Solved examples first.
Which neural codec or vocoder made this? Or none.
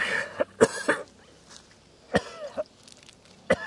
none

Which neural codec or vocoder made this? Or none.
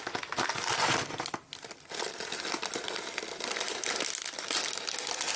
none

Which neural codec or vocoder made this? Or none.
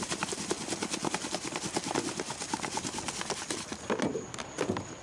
none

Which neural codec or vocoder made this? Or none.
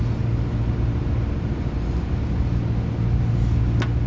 none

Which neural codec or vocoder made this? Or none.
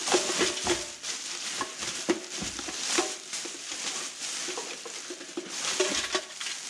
none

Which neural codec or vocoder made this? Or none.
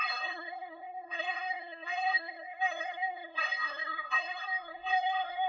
codec, SNAC